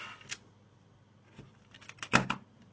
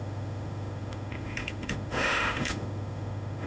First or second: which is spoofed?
second